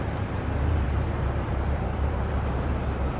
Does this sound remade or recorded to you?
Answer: remade